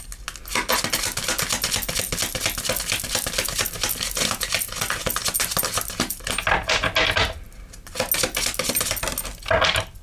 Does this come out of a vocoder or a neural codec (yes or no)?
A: no